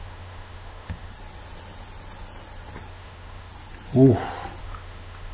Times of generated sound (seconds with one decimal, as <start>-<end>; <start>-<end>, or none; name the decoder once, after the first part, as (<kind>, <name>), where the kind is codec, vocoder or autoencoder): 0.0-1.1 (autoencoder, DAC-VAE); 2.9-3.5; 4.6-5.3